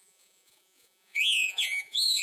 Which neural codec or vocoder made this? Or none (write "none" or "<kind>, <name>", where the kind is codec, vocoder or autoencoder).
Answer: vocoder, Vocos